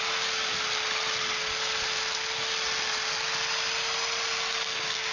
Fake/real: real